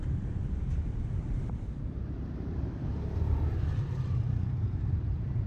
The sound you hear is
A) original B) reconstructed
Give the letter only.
B